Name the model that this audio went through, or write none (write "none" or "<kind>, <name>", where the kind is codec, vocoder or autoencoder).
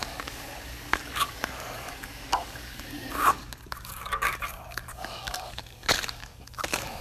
codec, DAC